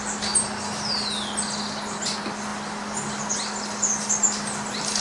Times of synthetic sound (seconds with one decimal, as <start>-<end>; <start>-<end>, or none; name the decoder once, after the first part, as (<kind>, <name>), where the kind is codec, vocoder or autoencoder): none